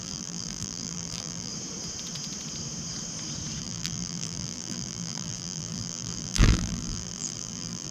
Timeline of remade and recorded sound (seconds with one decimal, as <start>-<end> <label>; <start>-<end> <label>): 0.0-1.5 remade; 1.5-3.6 recorded; 3.6-7.9 remade